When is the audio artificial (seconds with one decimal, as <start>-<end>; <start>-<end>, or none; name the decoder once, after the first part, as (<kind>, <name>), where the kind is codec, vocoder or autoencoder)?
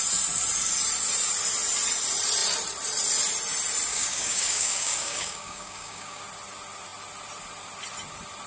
3.9-6.2 (codec, DAC)